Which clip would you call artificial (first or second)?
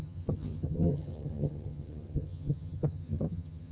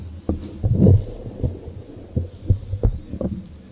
first